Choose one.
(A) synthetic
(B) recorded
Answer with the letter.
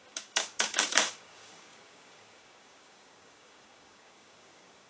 A